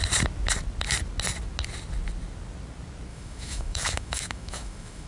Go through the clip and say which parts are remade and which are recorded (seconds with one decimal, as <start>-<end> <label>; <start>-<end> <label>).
0.0-3.1 recorded; 3.1-5.1 remade